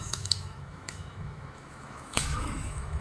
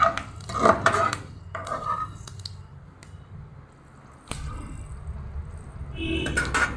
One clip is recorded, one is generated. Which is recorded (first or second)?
second